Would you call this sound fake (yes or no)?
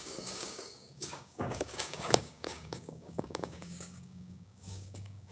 yes